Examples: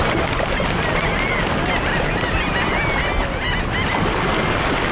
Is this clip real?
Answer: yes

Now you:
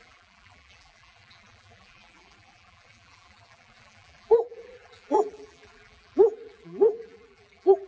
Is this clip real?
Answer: no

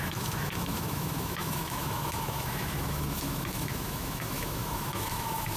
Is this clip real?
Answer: no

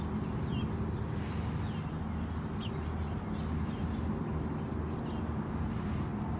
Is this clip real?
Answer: yes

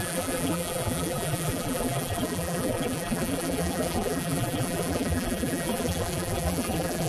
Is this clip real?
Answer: no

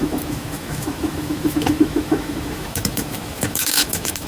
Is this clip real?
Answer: no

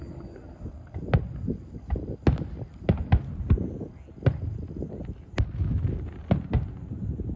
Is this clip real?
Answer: yes